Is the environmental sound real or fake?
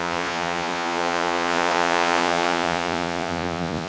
fake